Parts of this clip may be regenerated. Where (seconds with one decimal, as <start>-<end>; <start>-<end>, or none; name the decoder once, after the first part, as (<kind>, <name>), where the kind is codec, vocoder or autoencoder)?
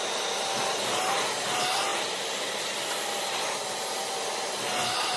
none